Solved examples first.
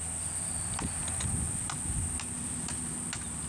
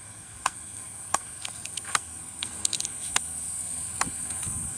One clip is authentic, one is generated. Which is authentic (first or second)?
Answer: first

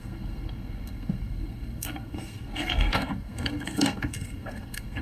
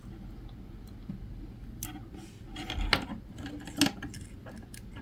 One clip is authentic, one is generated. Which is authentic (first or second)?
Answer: second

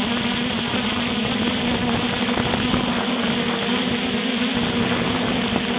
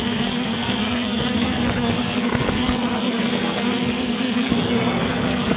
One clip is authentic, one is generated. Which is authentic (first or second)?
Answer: first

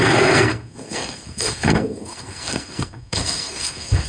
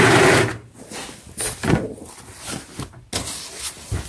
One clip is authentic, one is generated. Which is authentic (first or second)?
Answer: second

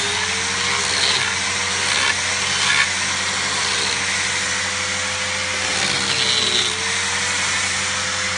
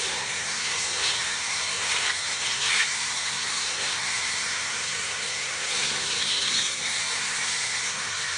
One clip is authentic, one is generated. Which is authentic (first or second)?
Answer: first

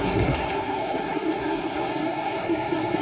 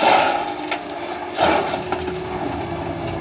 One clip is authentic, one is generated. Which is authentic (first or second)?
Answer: second